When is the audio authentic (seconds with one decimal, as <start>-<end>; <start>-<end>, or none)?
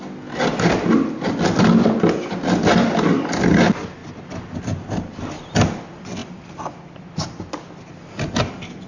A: 0.0-4.0; 4.6-8.9